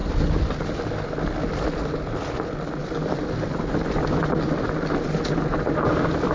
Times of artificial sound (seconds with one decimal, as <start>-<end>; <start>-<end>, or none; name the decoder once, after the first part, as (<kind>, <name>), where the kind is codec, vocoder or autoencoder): none